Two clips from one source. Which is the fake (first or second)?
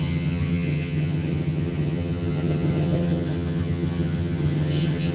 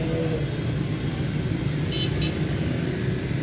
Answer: first